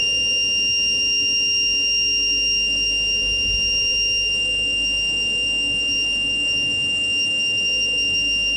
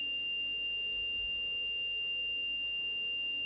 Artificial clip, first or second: first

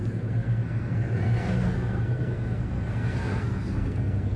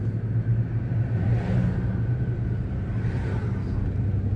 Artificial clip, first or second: first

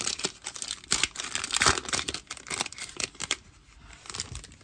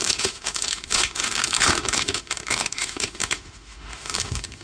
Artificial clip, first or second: second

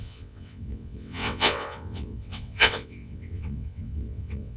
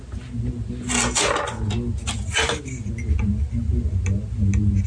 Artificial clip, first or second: first